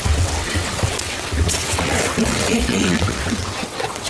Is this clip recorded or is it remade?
remade